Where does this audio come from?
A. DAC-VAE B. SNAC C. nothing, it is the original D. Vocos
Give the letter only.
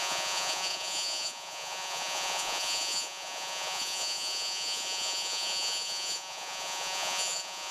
D